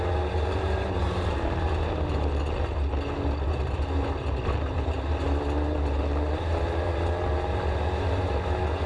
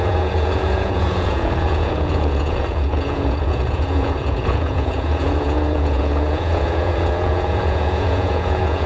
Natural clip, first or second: first